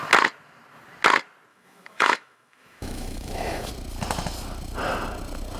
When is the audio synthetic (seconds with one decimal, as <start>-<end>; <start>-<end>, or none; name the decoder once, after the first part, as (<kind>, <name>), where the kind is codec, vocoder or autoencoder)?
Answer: 1.5-3.7 (autoencoder, DAC-VAE)